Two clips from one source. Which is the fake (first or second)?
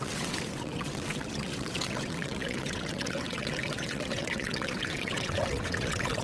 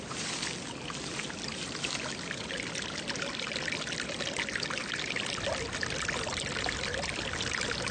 first